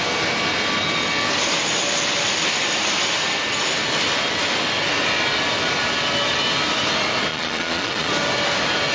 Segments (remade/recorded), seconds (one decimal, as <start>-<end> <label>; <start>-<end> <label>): 0.0-7.3 recorded; 7.3-8.1 remade; 8.1-8.9 recorded